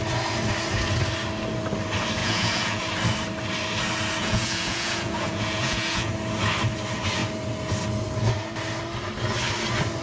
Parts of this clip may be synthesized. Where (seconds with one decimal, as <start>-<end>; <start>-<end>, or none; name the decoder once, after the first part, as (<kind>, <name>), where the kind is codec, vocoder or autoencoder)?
2.2-2.8 (vocoder, Vocos); 4.2-6.1